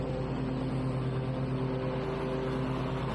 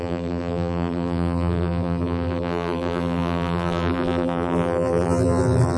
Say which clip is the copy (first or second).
second